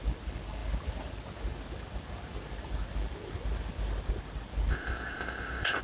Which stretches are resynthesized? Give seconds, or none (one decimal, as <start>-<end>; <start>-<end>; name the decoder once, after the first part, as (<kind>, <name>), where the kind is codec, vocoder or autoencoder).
4.7-5.8 (codec, ZipCodec)

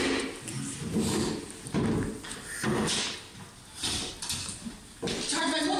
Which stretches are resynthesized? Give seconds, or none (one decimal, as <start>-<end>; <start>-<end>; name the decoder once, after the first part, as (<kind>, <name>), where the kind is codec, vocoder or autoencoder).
none

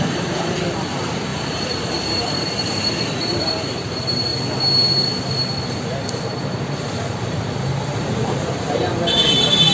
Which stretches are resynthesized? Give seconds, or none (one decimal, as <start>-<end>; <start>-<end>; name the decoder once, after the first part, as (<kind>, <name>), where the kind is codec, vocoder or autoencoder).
0.0-4.3 (vocoder, BigVGAN v2); 6.6-9.7

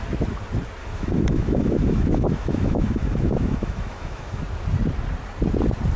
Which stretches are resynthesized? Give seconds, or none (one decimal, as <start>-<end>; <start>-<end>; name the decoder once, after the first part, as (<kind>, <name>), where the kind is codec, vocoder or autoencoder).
0.8-4.4 (autoencoder, DAC-VAE)